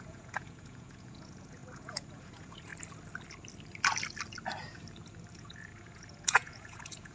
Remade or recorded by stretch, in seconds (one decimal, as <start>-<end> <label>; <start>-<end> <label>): 0.0-2.7 remade; 2.7-5.3 recorded; 5.3-7.1 remade